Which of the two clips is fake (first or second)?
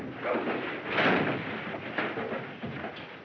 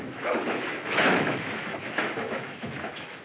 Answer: second